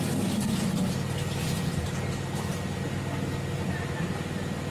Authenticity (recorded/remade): recorded